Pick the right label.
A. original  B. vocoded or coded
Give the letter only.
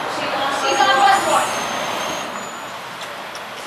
A